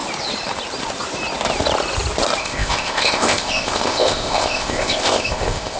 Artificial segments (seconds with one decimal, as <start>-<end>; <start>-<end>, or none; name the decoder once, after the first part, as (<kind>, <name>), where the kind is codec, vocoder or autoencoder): 2.4-5.8 (codec, ZipCodec)